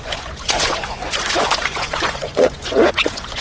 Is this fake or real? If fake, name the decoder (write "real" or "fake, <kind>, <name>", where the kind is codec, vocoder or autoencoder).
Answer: fake, vocoder, Vocos